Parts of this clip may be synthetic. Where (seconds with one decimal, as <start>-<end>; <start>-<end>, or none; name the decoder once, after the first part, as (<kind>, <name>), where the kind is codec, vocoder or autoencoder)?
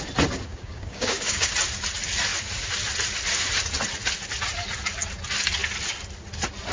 0.5-1.5 (codec, DAC)